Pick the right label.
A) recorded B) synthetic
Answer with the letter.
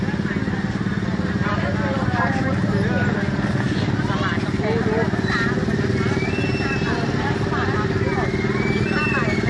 A